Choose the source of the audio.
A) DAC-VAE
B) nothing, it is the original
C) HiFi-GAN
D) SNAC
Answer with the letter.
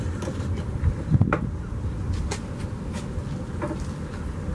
B